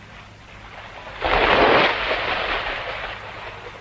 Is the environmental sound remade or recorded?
recorded